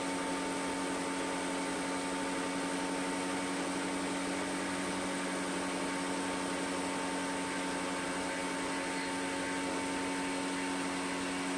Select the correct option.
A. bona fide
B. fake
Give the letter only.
A